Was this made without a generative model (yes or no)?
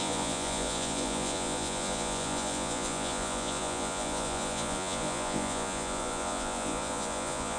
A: no